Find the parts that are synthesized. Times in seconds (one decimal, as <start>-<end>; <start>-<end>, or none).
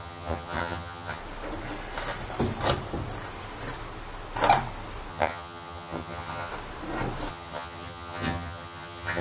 0.0-1.2; 5.1-6.5; 7.3-9.2